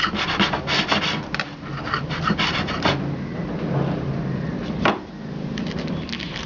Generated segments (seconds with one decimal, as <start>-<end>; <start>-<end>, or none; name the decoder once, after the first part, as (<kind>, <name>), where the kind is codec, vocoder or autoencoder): none